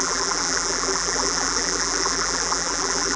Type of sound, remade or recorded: remade